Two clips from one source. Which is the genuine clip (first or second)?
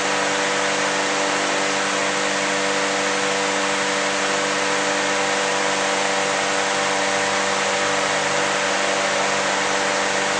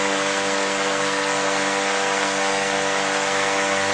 first